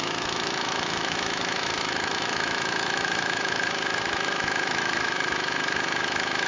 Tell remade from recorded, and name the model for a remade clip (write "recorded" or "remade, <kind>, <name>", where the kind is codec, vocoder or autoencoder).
remade, autoencoder, DAC-VAE